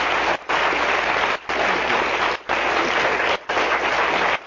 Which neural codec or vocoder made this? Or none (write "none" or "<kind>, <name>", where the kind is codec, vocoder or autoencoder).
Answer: none